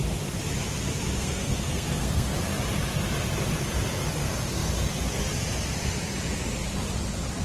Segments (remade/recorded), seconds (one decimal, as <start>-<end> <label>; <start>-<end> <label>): 0.0-1.2 recorded; 1.2-2.4 remade; 2.4-7.4 recorded